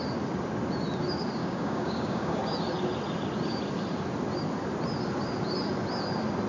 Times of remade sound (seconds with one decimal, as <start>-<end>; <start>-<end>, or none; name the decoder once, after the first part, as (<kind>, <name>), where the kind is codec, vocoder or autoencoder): 1.4-2.4 (codec, DAC)